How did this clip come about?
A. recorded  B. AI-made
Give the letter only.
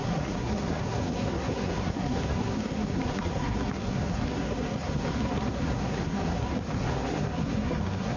B